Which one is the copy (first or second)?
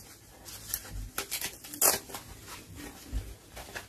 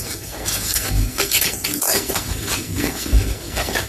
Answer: second